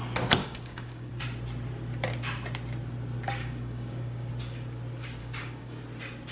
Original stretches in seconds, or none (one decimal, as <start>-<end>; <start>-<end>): 0.0-0.4; 1.1-3.4; 4.3-5.2; 5.8-6.3